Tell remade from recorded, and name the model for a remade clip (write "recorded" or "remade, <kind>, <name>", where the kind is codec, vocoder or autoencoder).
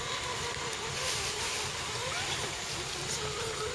recorded